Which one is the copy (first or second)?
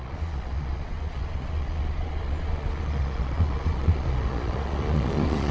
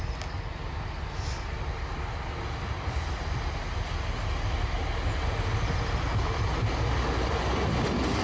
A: first